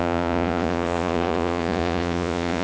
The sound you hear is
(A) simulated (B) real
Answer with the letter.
A